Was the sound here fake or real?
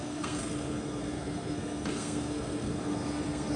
fake